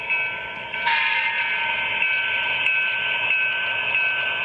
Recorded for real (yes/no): yes